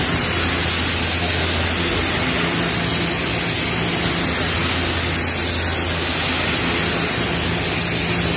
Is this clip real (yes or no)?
yes